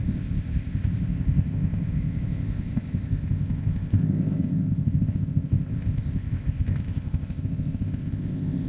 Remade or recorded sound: remade